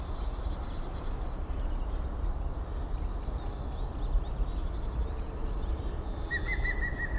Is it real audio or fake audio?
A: real